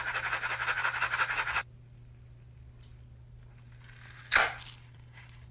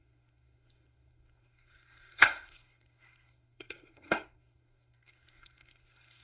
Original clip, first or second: first